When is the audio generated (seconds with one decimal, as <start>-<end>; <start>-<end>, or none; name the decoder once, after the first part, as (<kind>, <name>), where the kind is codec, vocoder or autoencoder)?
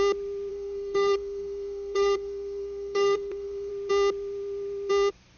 0.5-3.7 (codec, SNAC)